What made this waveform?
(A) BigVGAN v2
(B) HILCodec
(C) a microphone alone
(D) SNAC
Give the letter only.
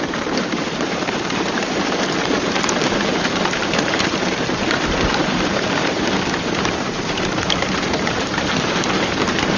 A